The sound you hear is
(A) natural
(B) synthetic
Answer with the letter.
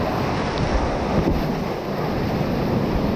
A